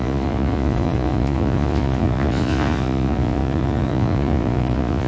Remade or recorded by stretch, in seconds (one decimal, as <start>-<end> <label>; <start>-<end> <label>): 0.0-5.1 remade